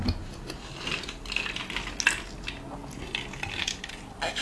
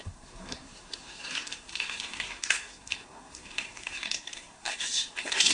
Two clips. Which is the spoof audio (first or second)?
second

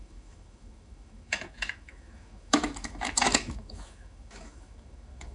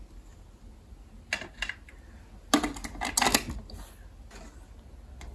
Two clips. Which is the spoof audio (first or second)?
first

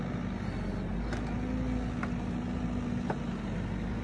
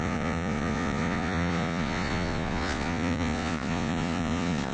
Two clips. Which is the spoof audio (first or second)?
second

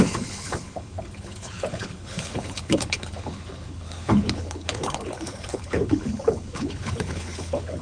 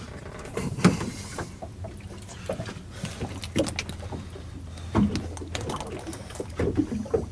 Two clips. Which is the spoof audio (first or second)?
first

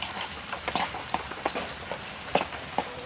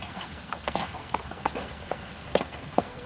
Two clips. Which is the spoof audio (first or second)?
second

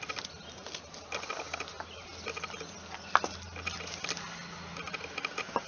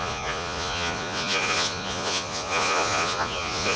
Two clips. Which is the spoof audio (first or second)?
second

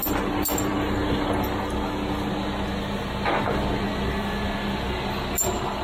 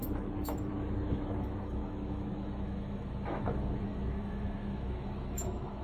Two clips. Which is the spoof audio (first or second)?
second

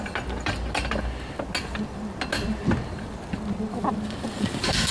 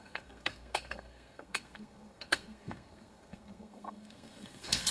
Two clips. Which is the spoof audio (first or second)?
second